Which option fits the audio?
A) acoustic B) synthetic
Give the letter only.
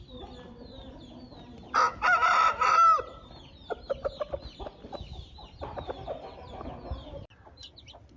A